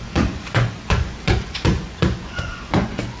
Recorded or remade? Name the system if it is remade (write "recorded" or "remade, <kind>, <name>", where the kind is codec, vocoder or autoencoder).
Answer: remade, vocoder, Vocos